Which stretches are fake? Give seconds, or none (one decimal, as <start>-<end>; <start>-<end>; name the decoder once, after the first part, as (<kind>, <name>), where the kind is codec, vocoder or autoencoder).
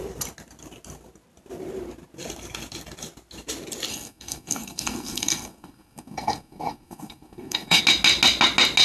3.9-7.8 (codec, SNAC)